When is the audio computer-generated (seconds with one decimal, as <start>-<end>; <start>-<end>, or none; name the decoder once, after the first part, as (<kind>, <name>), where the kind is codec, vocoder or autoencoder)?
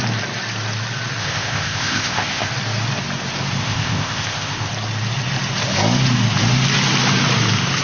1.2-2.5 (codec, ZipCodec); 3.6-4.7